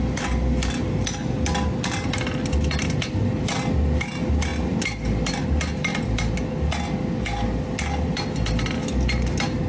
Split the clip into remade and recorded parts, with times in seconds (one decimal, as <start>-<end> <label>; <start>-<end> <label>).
0.0-9.7 recorded